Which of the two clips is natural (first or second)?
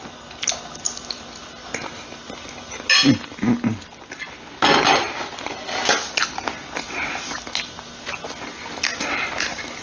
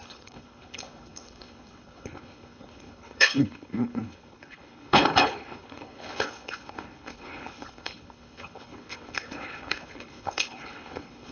first